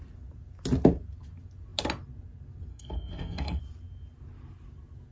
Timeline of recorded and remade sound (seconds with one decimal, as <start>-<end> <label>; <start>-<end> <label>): 0.0-2.7 recorded; 2.7-3.6 remade; 3.6-5.1 recorded